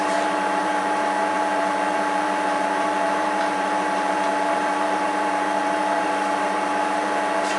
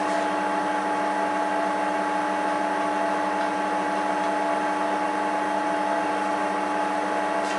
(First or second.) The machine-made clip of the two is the first